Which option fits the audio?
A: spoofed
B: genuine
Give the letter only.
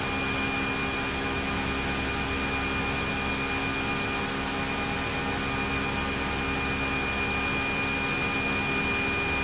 B